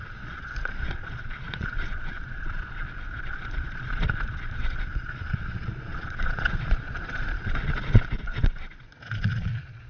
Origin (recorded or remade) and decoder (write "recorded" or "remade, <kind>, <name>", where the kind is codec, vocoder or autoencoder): remade, vocoder, Vocos